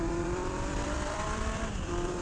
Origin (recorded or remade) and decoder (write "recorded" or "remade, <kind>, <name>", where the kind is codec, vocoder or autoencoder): remade, vocoder, BigVGAN v2